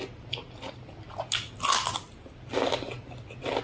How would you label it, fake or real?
real